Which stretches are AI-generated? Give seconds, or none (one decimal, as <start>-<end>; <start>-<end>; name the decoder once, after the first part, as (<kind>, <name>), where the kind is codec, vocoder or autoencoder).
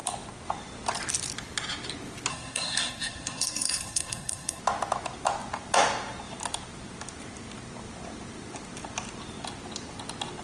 2.3-4.6 (codec, SNAC)